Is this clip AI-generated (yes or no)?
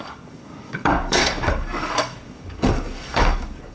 yes